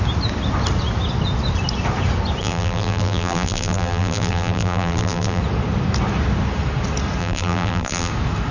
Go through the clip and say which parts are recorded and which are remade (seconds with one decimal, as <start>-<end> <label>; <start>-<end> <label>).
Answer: 0.0-2.4 recorded; 2.4-5.4 remade; 5.4-7.2 recorded; 7.2-8.1 remade; 8.1-8.5 recorded